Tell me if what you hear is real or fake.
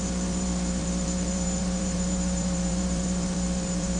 fake